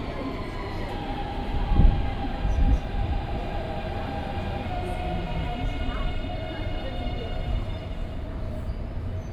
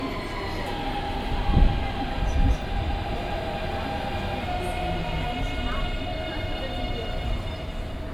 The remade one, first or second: first